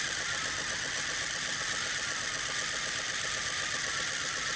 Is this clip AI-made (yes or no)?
no